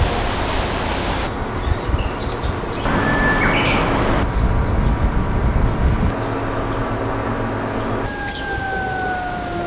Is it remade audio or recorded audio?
recorded